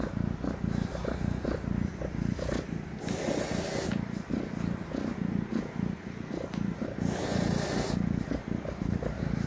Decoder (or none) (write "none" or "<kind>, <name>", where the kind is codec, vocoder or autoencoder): none